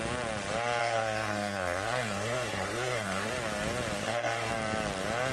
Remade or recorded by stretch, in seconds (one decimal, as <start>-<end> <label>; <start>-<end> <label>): 0.0-0.8 recorded; 0.8-3.3 remade; 3.3-4.0 recorded; 4.0-4.5 remade; 4.5-5.3 recorded